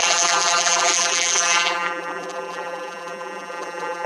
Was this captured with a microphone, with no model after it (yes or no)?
no